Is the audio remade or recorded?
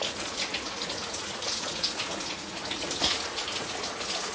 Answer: remade